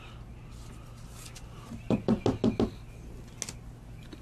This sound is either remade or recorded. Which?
recorded